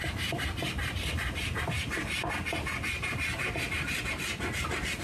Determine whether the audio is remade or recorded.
remade